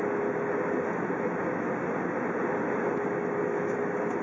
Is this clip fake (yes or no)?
no